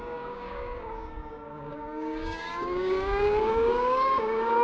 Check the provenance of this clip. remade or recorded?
remade